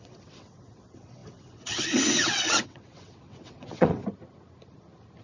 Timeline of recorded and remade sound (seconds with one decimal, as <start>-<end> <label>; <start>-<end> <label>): 0.0-4.0 remade; 4.0-5.2 recorded